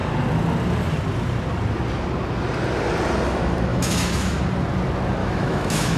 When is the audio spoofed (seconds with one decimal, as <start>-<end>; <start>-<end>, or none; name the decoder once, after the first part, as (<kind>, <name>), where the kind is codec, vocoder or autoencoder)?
3.7-4.4 (autoencoder, DAC-VAE); 5.2-6.0